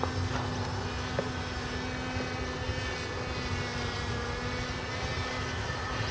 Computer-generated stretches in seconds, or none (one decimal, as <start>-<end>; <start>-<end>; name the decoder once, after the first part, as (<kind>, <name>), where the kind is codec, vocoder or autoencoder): none